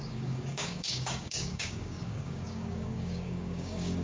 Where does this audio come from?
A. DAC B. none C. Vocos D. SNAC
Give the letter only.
A